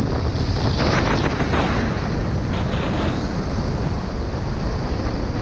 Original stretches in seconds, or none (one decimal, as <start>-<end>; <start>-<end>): 0.0-5.4